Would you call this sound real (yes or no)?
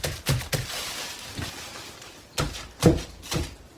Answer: no